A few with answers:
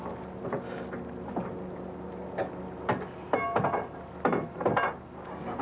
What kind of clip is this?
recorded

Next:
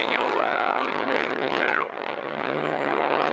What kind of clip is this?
remade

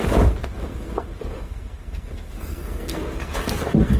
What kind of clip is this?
remade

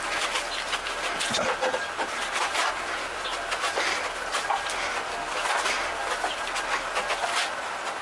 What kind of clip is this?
recorded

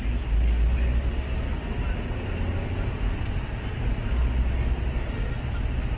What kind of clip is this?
recorded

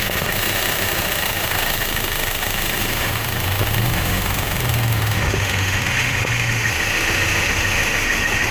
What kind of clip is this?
remade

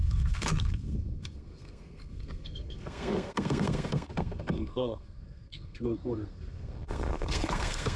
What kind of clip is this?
remade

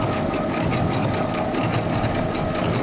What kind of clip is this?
remade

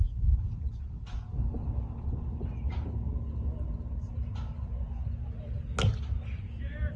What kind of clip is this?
recorded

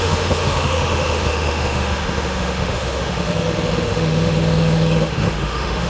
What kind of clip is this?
remade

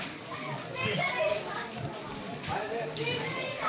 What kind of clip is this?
remade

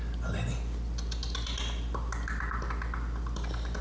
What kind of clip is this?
recorded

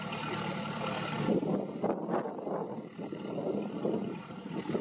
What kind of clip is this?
recorded